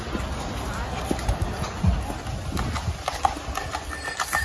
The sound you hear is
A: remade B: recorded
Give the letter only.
B